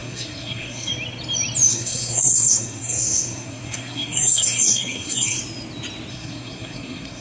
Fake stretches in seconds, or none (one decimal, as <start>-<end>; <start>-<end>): 0.0-0.9; 1.7-5.4; 6.1-7.2